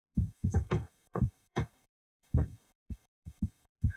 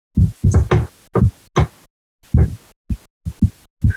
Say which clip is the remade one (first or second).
first